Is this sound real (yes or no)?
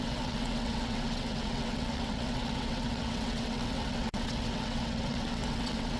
no